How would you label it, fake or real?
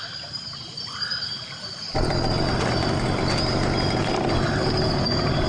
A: real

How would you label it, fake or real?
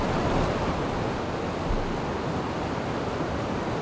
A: real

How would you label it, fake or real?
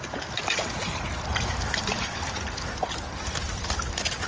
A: real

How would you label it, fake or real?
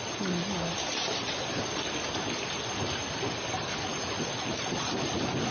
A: real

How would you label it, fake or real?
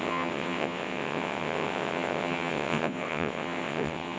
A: fake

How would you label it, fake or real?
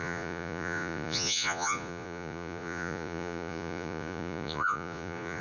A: fake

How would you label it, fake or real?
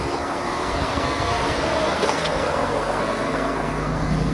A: fake